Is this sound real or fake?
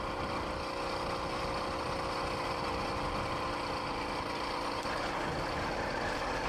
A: real